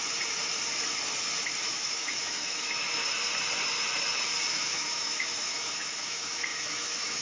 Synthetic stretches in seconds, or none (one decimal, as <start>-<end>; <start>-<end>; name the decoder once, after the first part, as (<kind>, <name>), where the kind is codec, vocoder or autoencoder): 1.7-3.0 (autoencoder, DAC-VAE); 4.5-7.2